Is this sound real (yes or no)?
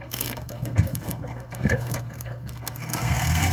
no